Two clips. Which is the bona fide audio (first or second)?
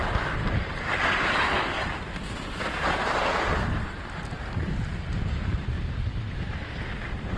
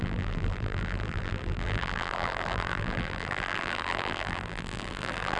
first